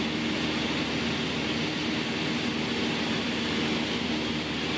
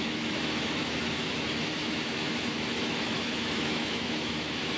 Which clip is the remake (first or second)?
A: second